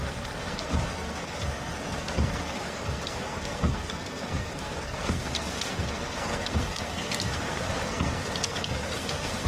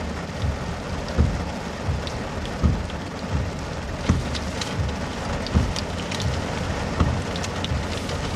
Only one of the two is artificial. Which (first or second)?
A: first